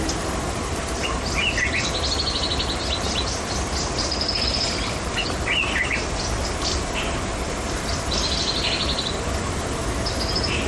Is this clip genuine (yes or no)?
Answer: yes